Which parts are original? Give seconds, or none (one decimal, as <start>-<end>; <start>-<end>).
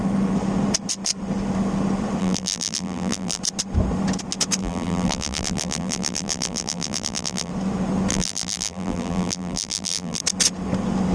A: 0.0-2.2; 3.4-4.6; 7.5-8.1; 10.2-11.1